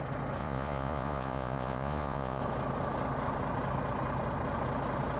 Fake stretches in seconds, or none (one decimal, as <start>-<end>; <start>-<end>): 0.4-2.4